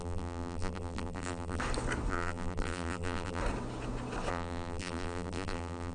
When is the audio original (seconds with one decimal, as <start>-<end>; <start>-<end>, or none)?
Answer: 1.6-2.1; 3.4-4.3